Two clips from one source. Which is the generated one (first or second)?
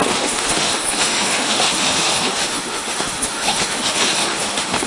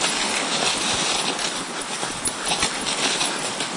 first